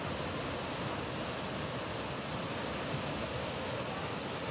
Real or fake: real